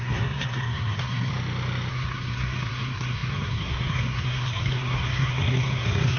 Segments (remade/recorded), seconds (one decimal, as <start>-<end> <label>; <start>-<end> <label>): 0.0-1.3 remade; 1.3-1.9 recorded; 1.9-6.2 remade